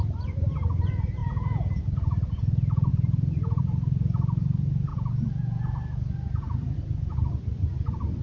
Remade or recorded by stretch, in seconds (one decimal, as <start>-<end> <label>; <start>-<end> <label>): 0.0-1.2 recorded; 1.2-1.8 remade; 1.8-4.9 recorded; 4.9-5.7 remade; 5.7-8.2 recorded